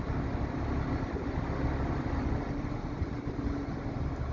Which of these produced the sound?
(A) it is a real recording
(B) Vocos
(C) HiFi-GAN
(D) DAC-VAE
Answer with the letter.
A